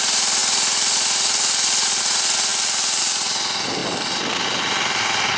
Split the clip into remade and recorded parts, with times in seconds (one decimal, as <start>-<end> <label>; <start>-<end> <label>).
0.0-5.4 recorded